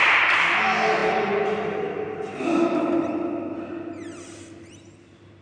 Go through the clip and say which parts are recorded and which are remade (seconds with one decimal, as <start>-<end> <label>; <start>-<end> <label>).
0.0-5.4 recorded